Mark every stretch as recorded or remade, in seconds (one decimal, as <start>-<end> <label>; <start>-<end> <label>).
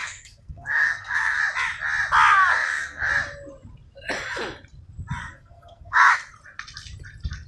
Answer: 0.0-1.4 remade; 1.4-2.5 recorded; 2.5-3.1 remade; 3.1-5.2 recorded; 5.2-6.1 remade; 6.1-7.5 recorded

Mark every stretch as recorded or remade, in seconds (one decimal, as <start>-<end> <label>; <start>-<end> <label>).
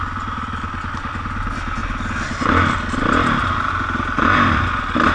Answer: 0.0-5.1 recorded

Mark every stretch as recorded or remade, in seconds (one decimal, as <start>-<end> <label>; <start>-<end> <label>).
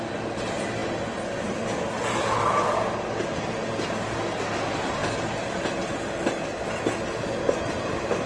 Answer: 0.0-8.3 recorded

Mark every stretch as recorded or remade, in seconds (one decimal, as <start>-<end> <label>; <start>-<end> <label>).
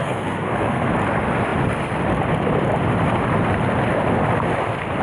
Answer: 0.0-0.9 remade; 0.9-5.0 recorded